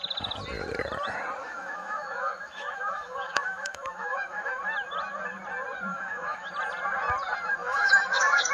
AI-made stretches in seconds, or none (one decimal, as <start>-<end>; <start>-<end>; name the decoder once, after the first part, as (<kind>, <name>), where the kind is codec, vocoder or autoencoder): 1.4-4.6 (autoencoder, DAC-VAE); 5.9-6.5; 7.6-8.5